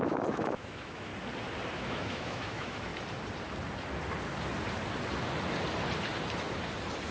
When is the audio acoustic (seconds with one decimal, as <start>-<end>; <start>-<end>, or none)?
1.1-1.7; 2.9-7.1